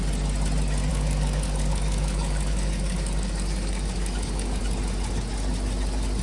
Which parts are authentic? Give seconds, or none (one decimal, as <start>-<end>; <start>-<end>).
0.0-0.9; 4.6-6.2